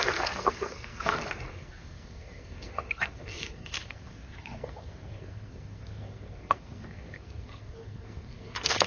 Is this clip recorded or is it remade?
remade